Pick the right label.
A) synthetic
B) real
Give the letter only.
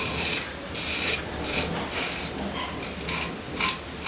B